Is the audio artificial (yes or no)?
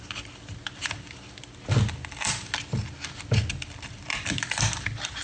no